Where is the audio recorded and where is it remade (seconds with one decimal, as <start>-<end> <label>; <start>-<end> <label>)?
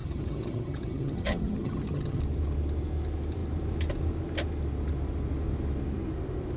0.0-2.2 remade; 2.2-6.6 recorded